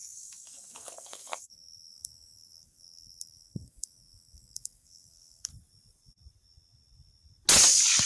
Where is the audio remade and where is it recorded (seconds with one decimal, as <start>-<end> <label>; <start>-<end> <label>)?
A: 0.0-5.5 remade; 5.5-8.1 recorded